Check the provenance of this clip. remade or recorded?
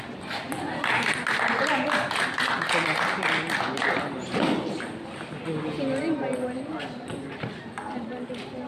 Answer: recorded